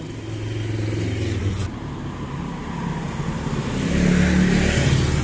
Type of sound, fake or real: real